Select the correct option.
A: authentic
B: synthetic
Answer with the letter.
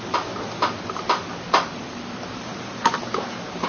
A